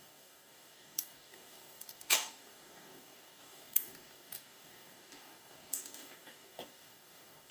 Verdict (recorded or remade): remade